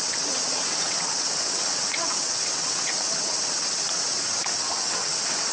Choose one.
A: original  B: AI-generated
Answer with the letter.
B